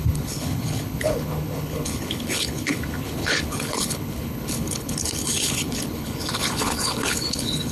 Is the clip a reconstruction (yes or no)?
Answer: yes